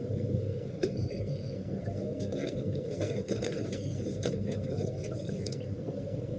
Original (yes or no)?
no